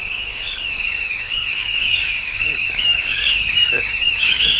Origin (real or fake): fake